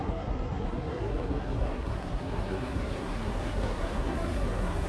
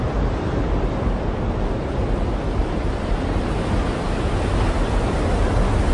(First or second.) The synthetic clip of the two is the first